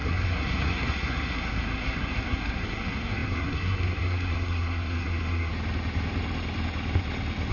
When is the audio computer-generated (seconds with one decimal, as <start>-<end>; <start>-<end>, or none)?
0.0-5.5

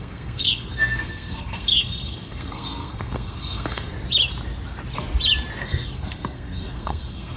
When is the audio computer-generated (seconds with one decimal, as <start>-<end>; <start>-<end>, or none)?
0.0-3.9; 5.6-7.4